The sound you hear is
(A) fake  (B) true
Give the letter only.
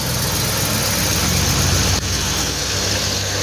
B